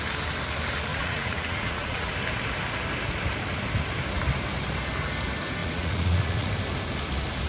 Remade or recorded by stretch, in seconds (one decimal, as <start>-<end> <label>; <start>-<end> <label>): 0.0-0.9 recorded; 0.9-2.1 remade; 2.1-5.6 recorded; 5.6-6.5 remade; 6.5-7.5 recorded